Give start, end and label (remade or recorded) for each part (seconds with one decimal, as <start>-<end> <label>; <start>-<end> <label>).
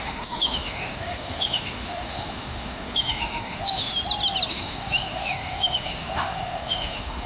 0.0-3.9 remade; 3.9-4.5 recorded; 4.5-7.3 remade